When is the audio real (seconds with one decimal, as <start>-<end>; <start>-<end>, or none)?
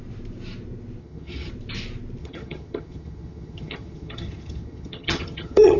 0.0-1.0; 1.5-2.2